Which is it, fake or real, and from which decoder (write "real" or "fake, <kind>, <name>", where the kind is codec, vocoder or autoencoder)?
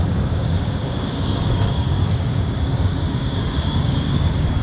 fake, codec, DAC